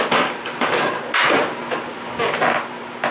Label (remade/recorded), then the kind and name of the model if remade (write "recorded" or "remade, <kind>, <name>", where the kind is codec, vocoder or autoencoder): recorded